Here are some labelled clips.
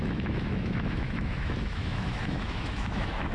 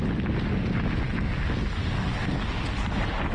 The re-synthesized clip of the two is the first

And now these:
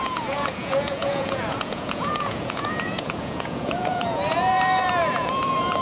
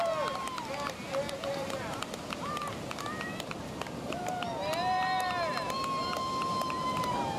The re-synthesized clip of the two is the first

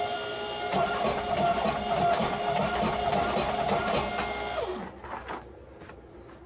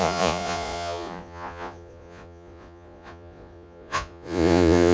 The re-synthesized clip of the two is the second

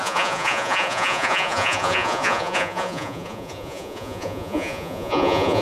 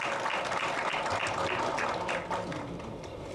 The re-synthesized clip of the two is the first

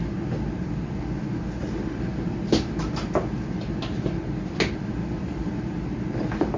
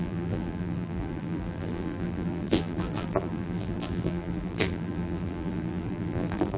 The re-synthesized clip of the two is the second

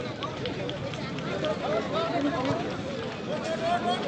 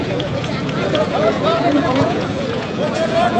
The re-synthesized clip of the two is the second